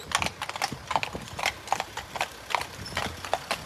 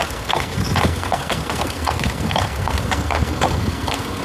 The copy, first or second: second